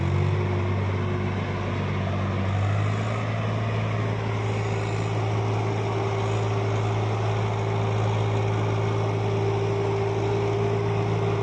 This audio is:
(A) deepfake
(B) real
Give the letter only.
B